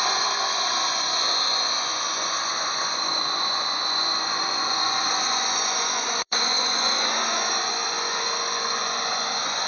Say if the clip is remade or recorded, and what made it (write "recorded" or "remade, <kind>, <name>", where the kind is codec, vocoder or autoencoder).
remade, vocoder, Vocos